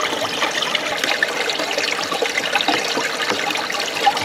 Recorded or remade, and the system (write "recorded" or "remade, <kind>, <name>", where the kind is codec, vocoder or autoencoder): recorded